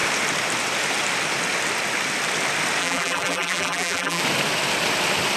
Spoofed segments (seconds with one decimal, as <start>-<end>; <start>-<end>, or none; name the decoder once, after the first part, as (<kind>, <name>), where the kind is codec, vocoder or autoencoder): 2.8-4.2 (vocoder, BigVGAN v2)